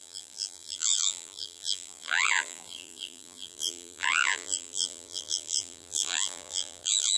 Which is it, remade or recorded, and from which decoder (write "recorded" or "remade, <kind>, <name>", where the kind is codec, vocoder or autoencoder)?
remade, vocoder, BigVGAN v2